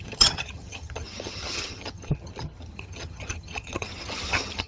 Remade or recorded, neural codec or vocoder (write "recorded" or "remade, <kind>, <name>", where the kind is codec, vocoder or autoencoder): remade, vocoder, HiFi-GAN